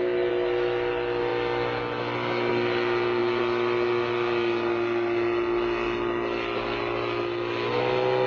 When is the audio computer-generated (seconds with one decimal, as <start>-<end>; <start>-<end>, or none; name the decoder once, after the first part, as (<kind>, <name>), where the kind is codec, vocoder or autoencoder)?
none